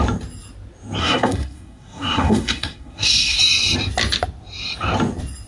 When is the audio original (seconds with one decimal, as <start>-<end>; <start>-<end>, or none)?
0.0-1.0; 3.4-5.5